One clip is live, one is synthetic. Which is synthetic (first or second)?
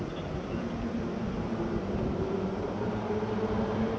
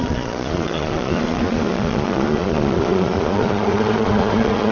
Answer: second